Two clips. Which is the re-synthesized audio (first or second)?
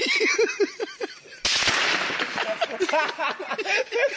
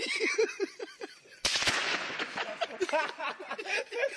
second